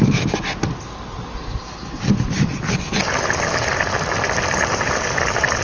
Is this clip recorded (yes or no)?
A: yes